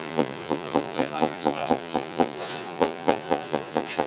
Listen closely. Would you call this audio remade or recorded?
remade